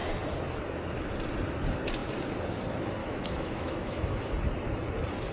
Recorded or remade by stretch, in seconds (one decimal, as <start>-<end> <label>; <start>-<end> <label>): 0.0-3.0 recorded; 3.0-4.3 remade; 4.3-5.3 recorded